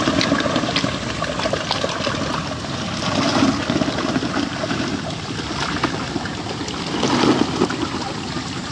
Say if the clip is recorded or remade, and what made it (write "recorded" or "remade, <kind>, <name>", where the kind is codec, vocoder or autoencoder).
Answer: recorded